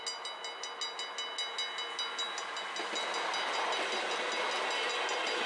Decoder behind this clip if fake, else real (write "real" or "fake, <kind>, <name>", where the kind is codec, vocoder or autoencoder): real